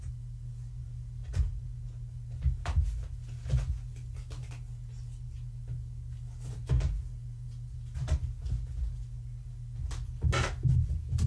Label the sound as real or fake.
real